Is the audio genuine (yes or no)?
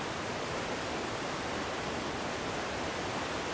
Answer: no